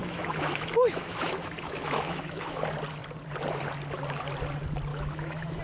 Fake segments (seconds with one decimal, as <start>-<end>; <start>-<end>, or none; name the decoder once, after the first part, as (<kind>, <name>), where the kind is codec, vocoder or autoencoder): 0.0-2.6 (autoencoder, DAC-VAE); 4.9-5.6